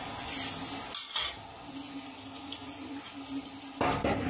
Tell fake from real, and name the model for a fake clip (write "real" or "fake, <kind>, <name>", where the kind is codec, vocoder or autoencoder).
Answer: real